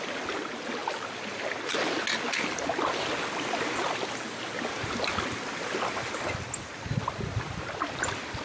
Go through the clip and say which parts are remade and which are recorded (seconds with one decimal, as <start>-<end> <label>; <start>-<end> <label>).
0.0-8.4 recorded